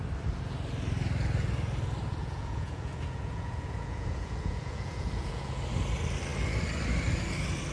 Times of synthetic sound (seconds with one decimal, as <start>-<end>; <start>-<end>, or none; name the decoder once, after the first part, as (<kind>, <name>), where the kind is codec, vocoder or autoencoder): 2.2-5.6 (vocoder, Vocos)